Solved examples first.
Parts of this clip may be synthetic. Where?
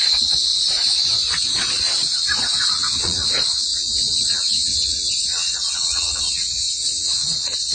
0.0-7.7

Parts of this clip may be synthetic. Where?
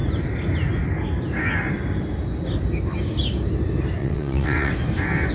4.0-4.7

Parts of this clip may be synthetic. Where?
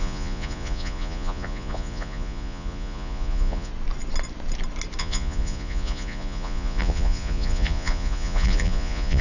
0.0-3.7; 5.0-9.2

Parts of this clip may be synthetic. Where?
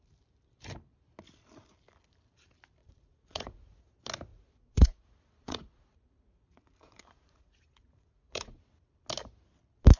2.8-3.9; 4.3-8.6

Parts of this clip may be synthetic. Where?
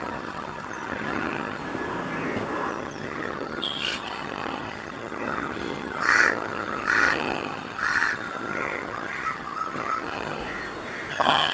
0.0-1.6; 2.7-10.4; 11.1-11.5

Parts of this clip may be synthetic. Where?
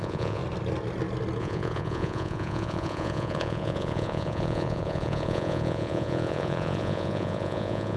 0.0-0.4; 1.4-8.0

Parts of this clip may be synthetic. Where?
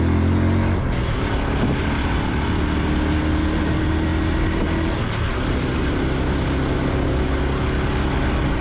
none